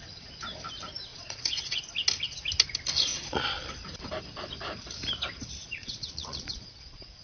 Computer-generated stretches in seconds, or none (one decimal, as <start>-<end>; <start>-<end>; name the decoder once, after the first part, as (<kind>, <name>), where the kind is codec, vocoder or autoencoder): 1.1-1.8 (vocoder, Vocos); 3.1-3.7; 5.6-7.2